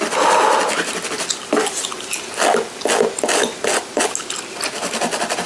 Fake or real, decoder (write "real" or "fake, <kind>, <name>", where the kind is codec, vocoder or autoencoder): real